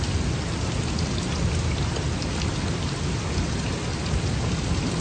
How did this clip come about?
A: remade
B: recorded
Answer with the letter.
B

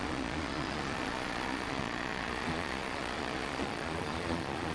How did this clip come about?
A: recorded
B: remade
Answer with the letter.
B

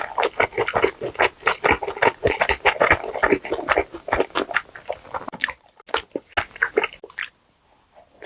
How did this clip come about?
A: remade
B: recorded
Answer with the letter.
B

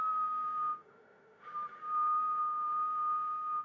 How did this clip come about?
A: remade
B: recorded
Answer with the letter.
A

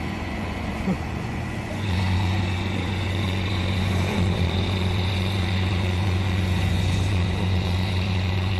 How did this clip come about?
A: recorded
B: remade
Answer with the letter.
B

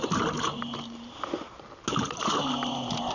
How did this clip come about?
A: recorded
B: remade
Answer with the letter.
A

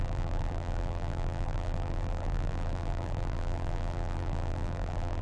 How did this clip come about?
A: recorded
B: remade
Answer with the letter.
B